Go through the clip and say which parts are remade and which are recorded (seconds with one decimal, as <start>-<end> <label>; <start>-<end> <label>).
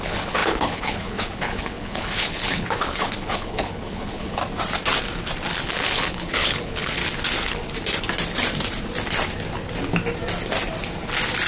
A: 0.0-4.4 remade; 4.4-5.7 recorded; 5.7-7.0 remade; 7.0-11.5 recorded